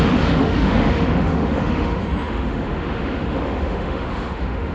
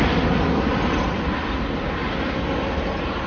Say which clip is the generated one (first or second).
first